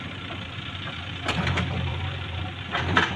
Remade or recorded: remade